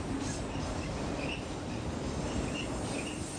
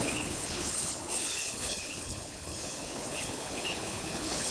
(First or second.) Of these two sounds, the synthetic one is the second